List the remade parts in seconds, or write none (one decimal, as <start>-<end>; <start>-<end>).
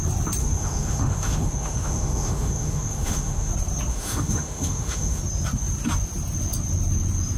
0.4-3.5; 3.9-5.2